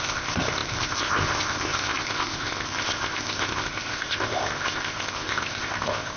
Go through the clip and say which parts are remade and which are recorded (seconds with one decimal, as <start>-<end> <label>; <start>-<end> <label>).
0.0-6.2 remade